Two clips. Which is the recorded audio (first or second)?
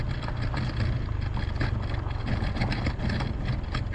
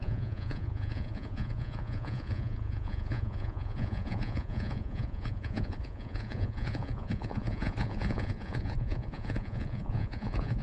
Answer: first